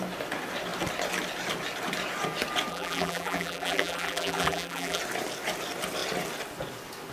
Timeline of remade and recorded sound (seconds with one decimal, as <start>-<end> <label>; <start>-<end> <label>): 0.0-2.7 recorded; 2.7-5.0 remade; 5.0-7.1 recorded